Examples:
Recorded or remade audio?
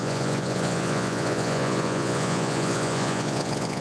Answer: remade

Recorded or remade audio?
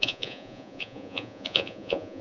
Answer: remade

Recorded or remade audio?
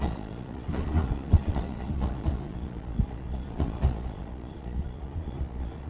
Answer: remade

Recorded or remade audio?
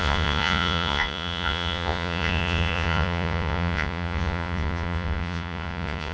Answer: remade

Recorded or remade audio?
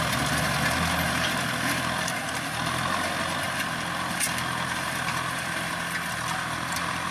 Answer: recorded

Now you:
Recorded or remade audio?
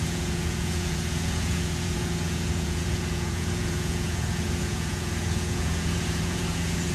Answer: remade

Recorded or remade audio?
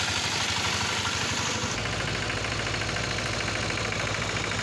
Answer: recorded